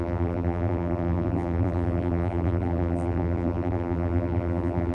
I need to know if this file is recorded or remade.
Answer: remade